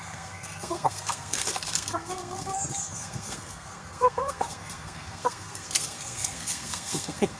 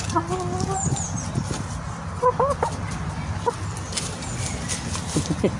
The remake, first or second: first